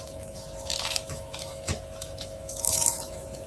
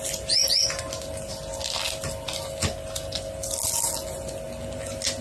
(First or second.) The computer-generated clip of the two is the first